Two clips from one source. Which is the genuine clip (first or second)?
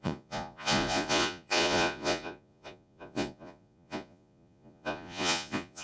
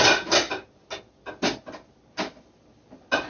second